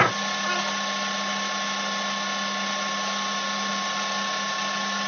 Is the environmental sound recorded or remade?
recorded